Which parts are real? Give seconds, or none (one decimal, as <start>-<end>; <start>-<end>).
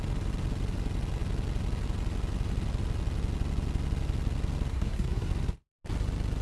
0.0-4.7; 5.3-6.4